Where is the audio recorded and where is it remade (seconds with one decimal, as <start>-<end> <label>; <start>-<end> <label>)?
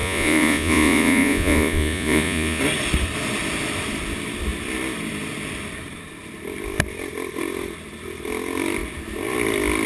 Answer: 0.0-2.6 remade; 2.6-9.9 recorded